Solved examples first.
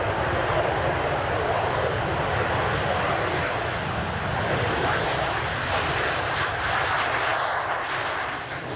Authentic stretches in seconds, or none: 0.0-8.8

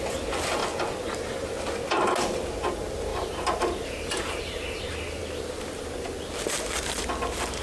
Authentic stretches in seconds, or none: 0.0-3.1; 4.8-7.6

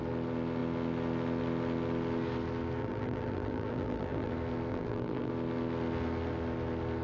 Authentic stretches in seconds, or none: 0.0-2.8; 4.3-4.7; 5.3-7.0

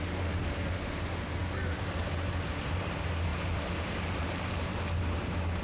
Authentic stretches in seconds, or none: 0.0-3.3; 4.8-5.6

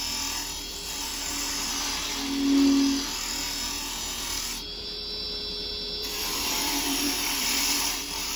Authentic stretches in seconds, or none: 1.1-4.2

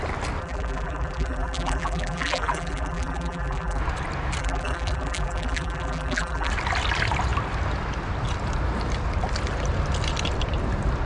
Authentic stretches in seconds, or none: 0.0-0.4; 3.8-4.4; 6.5-11.1

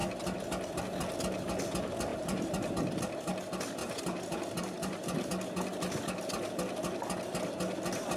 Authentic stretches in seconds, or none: 0.0-2.1; 2.7-3.8; 5.3-8.2